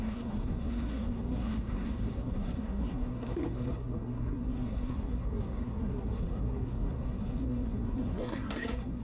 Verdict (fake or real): fake